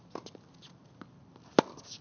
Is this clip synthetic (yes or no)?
no